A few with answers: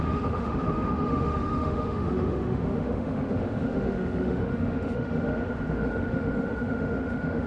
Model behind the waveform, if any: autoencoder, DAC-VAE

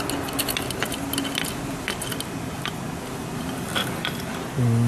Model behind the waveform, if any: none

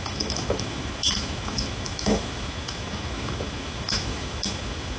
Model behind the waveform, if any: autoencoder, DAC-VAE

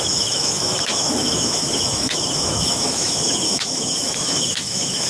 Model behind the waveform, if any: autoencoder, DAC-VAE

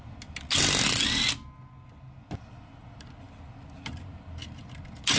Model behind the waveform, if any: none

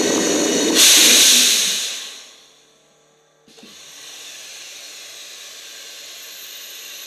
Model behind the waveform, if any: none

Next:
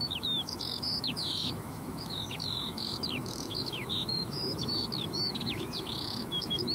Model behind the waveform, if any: autoencoder, DAC-VAE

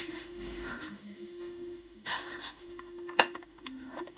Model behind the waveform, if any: autoencoder, DAC-VAE